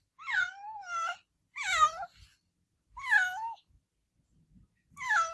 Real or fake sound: real